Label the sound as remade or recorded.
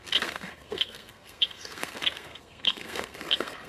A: remade